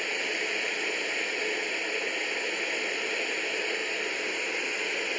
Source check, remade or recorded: recorded